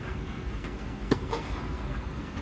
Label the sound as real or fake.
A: fake